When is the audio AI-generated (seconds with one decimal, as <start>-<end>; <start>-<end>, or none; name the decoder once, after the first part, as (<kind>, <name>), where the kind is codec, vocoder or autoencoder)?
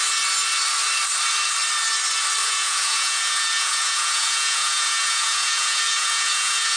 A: 2.4-6.8 (vocoder, Vocos)